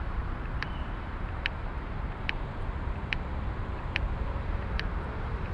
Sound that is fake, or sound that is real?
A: fake